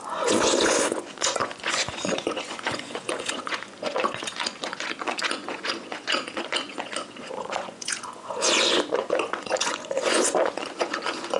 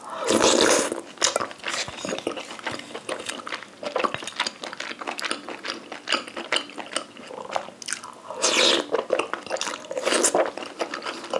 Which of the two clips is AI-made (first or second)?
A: first